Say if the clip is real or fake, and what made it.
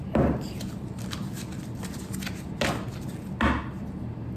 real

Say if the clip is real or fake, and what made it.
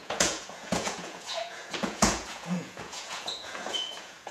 fake, vocoder, Vocos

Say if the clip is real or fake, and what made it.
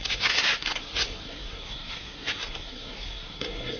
fake, codec, SNAC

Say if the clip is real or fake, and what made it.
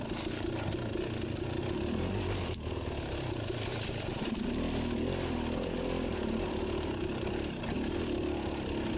real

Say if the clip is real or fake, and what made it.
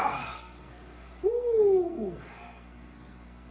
fake, codec, SNAC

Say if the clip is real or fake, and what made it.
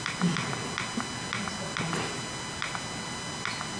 real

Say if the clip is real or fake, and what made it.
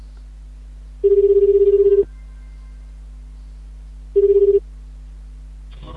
real